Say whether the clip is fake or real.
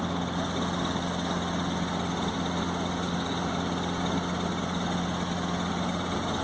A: real